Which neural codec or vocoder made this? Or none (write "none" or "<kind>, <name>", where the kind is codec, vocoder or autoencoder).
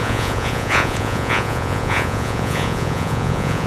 vocoder, Vocos